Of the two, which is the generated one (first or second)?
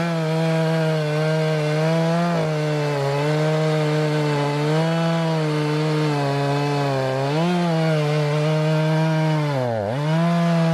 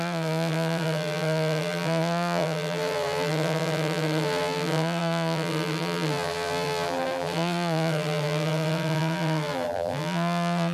second